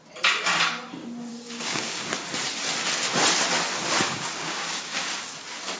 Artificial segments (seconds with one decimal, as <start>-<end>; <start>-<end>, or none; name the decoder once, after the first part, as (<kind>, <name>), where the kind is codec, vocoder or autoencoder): 1.3-2.1 (codec, DAC); 4.1-5.3